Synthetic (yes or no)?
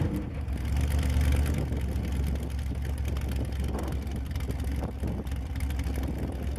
no